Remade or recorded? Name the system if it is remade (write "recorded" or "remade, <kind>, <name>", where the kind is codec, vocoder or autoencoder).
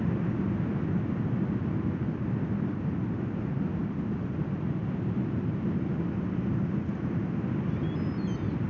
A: recorded